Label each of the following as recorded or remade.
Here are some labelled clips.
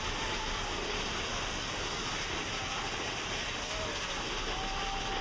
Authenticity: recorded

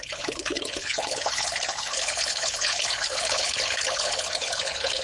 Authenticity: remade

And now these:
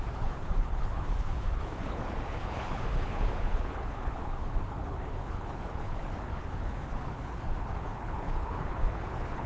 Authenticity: remade